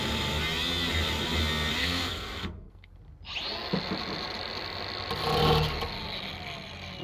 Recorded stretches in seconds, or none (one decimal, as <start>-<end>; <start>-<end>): 0.0-1.8; 2.9-7.0